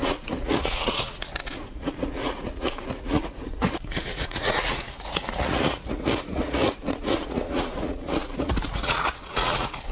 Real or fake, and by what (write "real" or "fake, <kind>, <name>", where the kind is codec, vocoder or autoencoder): fake, vocoder, Vocos